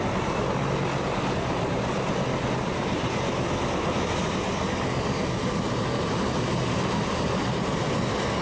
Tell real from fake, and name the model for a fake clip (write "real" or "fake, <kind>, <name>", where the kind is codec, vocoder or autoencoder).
real